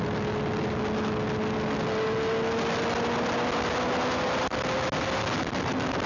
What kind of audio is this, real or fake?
real